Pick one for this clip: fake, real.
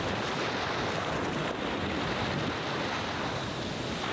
real